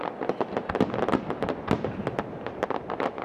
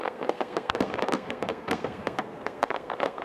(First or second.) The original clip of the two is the first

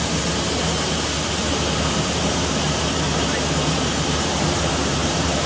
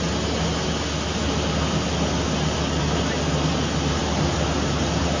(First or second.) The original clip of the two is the second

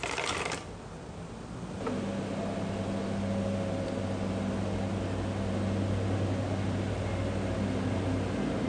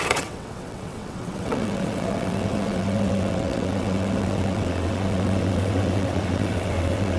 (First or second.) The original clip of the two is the first